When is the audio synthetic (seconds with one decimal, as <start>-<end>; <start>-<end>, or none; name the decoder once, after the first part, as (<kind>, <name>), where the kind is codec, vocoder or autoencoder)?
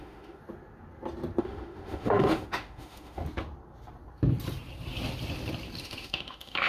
0.0-0.4 (autoencoder, DAC-VAE); 1.4-3.2; 5.8-6.7